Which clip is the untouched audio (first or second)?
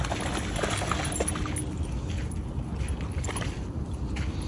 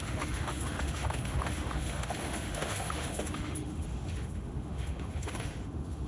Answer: first